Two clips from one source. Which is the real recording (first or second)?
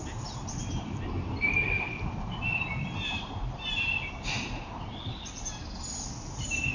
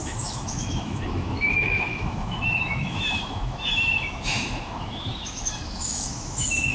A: first